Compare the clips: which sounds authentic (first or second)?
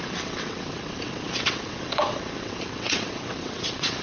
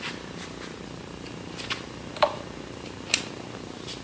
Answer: second